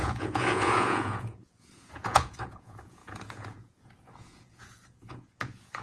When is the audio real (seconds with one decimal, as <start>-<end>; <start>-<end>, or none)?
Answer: none